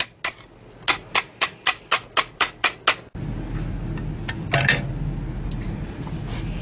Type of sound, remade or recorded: recorded